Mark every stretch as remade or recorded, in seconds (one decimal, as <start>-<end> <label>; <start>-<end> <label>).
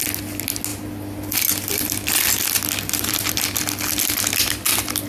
0.0-5.1 recorded